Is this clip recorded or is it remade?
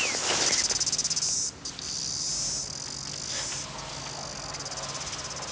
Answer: recorded